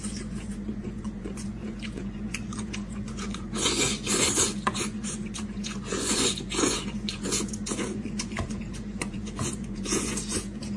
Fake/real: fake